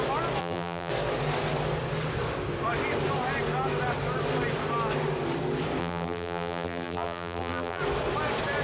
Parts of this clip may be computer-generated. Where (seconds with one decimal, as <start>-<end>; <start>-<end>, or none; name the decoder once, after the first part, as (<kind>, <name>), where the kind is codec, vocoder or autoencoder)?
0.4-0.9 (vocoder, BigVGAN v2); 5.8-7.8